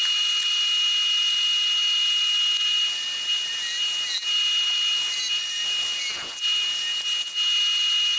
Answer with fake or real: real